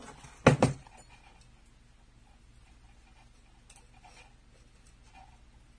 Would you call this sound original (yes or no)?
yes